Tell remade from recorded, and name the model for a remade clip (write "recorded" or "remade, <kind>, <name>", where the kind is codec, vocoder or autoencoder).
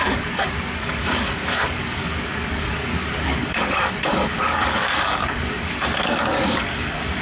remade, codec, DAC